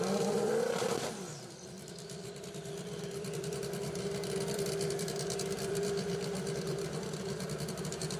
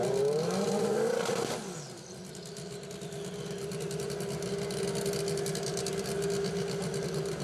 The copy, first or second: first